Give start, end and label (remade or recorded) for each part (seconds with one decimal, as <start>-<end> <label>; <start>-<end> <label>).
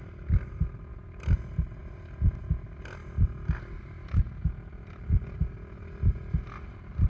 0.0-7.1 recorded